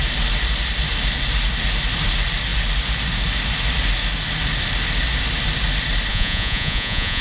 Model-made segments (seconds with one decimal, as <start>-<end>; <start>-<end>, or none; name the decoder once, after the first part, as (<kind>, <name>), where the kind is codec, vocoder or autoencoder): 6.1-7.2 (vocoder, Vocos)